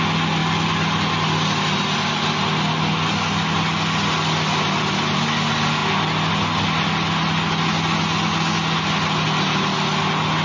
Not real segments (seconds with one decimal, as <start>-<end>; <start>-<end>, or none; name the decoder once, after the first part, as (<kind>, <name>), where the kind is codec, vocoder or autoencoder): none